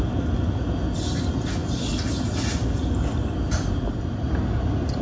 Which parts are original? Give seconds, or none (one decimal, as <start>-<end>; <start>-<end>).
0.0-5.0